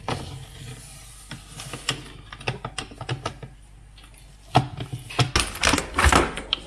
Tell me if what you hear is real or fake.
real